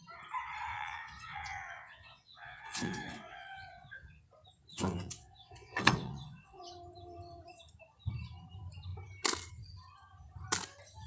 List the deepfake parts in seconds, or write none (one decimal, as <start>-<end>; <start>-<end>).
0.7-4.2; 4.7-6.6